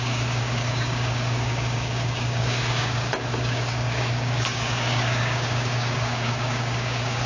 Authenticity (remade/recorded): remade